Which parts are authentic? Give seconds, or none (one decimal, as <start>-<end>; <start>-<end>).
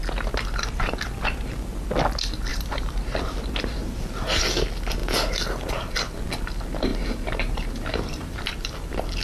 0.0-2.5; 3.3-6.9; 8.5-9.2